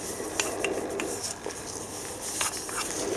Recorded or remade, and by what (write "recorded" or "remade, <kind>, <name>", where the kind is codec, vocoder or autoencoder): recorded